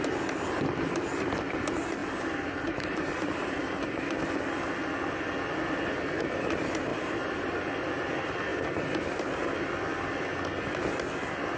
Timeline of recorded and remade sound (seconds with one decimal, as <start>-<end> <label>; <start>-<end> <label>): 0.0-2.0 recorded; 2.0-4.0 remade; 4.0-6.9 recorded; 6.9-8.1 remade; 8.1-11.6 recorded